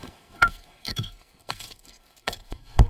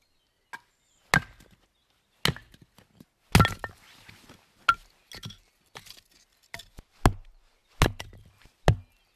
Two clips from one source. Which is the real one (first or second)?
second